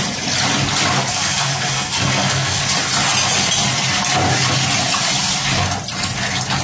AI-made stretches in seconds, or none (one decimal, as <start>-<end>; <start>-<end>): 1.1-2.6